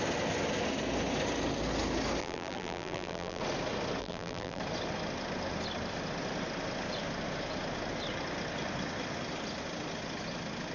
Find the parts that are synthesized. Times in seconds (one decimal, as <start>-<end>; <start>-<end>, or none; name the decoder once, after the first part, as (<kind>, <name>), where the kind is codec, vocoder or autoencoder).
2.2-3.4 (vocoder, BigVGAN v2); 4.0-4.6